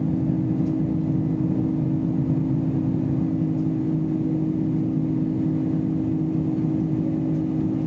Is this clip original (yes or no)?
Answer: yes